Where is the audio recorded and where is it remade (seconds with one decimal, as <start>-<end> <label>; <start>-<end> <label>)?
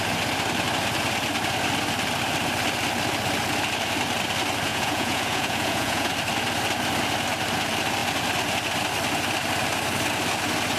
0.0-4.7 recorded; 4.7-6.1 remade; 6.1-10.8 recorded